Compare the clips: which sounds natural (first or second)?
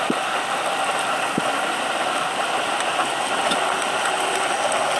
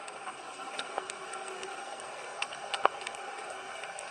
first